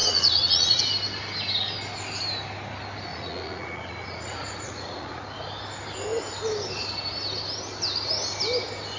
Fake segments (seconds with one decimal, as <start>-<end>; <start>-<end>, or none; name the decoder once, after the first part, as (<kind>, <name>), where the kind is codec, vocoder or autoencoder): 0.0-0.8 (vocoder, Vocos); 3.1-5.2